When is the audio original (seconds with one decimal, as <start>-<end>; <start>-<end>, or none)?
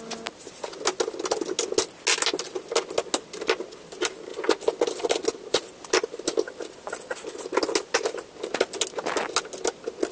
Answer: 0.0-10.1